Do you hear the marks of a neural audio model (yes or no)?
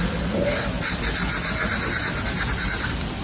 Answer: no